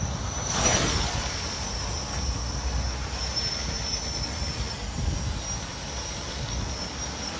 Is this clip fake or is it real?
real